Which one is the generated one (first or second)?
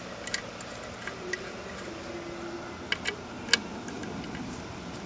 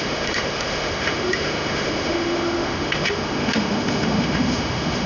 second